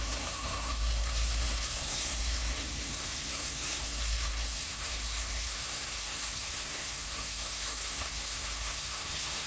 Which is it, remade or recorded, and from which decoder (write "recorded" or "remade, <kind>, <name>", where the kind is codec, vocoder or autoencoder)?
remade, codec, SNAC